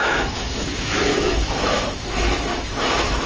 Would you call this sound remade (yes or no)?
yes